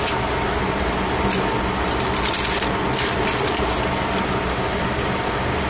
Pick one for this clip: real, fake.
real